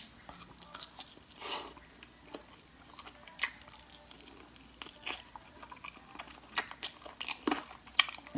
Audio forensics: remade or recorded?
recorded